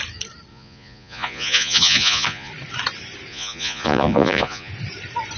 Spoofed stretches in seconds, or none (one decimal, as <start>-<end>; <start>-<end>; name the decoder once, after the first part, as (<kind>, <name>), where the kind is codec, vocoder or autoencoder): 0.5-2.5 (vocoder, Vocos); 3.3-4.7